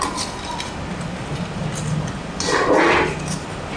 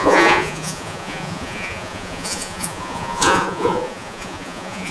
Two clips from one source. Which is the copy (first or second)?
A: second